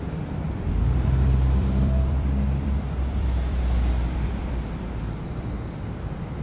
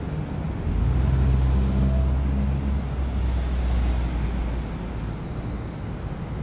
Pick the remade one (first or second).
first